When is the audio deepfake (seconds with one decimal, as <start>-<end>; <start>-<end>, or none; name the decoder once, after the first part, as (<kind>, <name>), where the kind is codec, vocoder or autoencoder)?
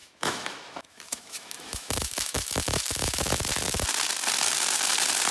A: 0.0-3.2 (autoencoder, DAC-VAE)